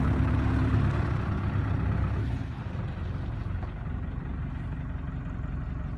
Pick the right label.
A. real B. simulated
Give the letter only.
A